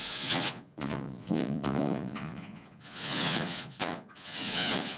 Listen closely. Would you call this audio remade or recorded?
remade